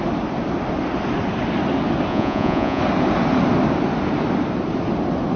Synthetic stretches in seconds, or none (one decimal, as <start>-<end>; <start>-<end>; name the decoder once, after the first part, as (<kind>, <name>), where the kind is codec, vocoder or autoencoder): 2.1-2.8 (vocoder, Vocos)